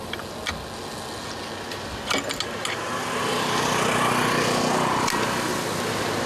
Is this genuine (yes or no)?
yes